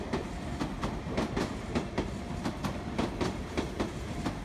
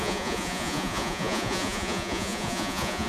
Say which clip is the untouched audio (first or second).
first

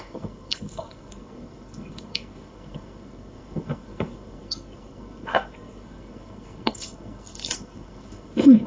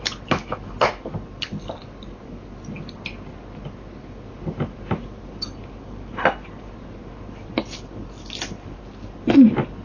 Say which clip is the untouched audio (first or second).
second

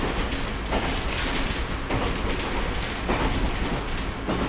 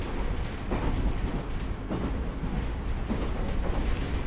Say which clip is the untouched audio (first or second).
first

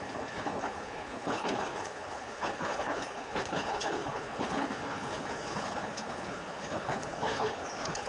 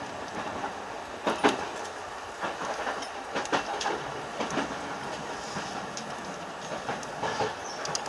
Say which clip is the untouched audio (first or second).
second